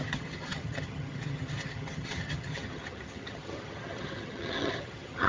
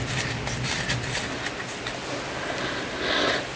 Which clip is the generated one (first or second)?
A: first